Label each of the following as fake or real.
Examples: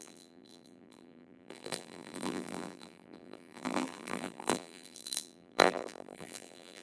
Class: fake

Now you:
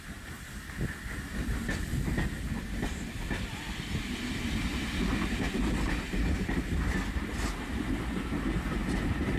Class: real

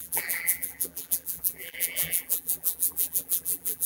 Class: fake